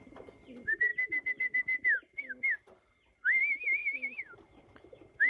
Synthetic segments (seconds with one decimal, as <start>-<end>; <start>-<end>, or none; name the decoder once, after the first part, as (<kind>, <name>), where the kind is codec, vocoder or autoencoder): none